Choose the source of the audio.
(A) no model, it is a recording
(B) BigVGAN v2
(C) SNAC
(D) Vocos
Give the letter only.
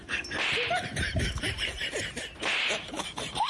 B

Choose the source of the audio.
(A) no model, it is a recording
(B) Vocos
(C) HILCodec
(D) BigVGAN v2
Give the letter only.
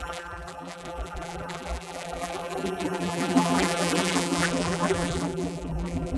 D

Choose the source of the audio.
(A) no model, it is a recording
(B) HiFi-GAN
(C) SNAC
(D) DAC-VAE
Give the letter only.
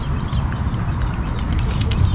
A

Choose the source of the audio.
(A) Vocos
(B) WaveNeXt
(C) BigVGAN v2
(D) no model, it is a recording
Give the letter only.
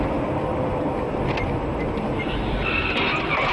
D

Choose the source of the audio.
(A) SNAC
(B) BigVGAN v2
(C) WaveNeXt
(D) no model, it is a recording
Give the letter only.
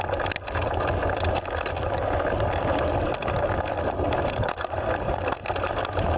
D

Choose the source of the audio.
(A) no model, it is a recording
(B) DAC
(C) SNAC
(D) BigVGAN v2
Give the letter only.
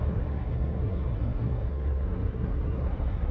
C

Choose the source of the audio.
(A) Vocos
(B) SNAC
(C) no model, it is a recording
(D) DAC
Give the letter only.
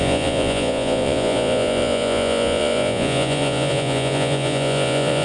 A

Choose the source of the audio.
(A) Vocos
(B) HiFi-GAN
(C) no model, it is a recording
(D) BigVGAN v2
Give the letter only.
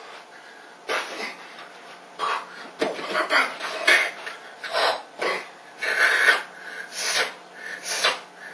C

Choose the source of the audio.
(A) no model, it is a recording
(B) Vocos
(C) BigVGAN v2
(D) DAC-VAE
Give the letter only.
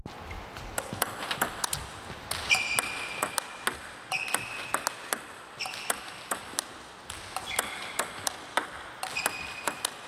A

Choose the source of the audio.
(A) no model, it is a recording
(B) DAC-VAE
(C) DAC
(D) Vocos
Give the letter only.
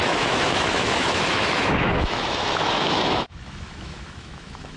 B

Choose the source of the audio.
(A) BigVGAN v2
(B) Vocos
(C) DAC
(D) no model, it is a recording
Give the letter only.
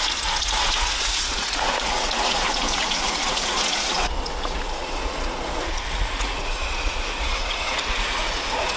B